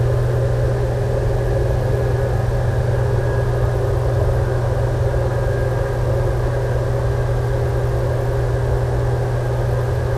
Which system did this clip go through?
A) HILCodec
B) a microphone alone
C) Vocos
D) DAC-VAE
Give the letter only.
B